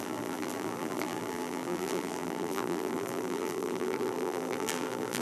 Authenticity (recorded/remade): remade